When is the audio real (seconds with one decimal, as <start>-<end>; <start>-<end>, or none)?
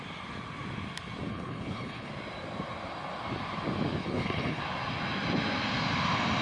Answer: 0.0-1.3; 2.1-4.0; 4.6-6.4